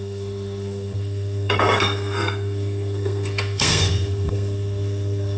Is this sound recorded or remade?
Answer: remade